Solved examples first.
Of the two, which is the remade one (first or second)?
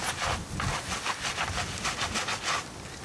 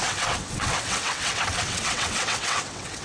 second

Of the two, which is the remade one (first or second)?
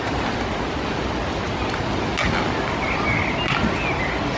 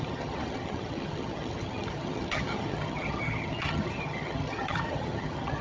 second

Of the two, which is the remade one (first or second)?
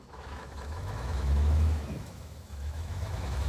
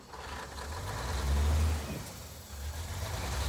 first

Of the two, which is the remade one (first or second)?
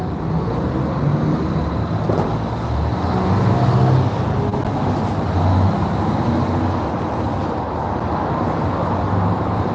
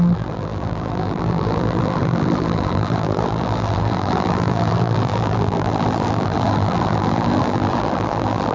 second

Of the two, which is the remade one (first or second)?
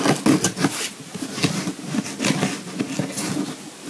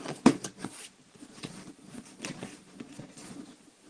second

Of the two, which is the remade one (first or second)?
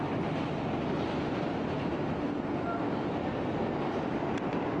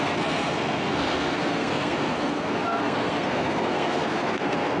second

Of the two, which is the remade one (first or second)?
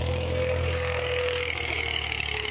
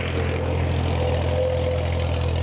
first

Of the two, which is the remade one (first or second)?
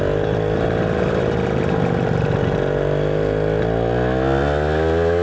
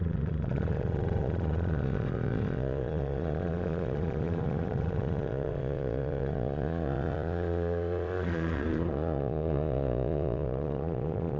second